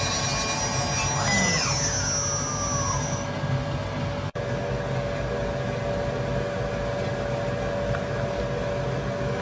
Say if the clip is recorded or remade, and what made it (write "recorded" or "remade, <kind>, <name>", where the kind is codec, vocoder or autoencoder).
recorded